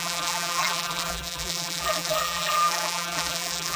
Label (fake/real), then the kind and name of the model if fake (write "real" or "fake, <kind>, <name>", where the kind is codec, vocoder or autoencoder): fake, vocoder, BigVGAN v2